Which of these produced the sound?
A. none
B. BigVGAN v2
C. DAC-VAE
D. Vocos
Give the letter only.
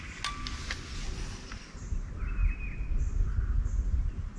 A